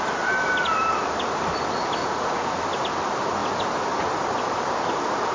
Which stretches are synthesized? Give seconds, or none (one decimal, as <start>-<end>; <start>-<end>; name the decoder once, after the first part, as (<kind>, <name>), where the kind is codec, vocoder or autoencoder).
2.0-2.6 (vocoder, Vocos)